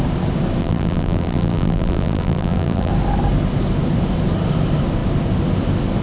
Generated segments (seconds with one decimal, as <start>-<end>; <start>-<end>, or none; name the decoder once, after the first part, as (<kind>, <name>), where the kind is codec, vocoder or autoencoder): 0.6-2.9 (vocoder, BigVGAN v2)